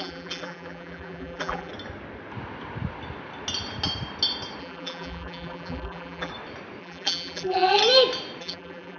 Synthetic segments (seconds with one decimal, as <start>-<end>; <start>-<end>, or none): 0.0-1.7; 4.6-6.3; 6.8-7.8; 8.4-9.0